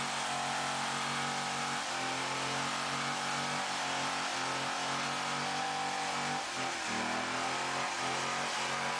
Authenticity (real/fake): real